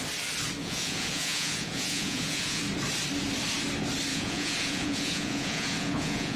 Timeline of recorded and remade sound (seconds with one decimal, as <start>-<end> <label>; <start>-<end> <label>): 0.0-0.6 recorded; 0.6-2.6 remade; 2.6-4.1 recorded; 4.1-6.4 remade